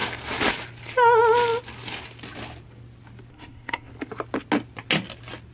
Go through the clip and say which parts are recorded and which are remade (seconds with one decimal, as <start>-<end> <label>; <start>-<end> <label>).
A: 0.0-3.3 recorded; 3.3-3.9 remade; 3.9-5.5 recorded